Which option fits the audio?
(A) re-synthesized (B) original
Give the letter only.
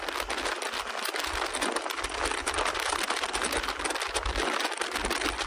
B